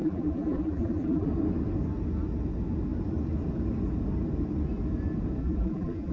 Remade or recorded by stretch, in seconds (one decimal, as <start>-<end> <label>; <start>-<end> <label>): 0.0-1.3 remade; 1.3-5.4 recorded; 5.4-6.1 remade